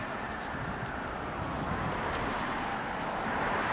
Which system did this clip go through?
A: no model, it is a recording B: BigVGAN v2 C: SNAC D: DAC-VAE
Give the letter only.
B